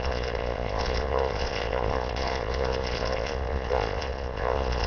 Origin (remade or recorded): remade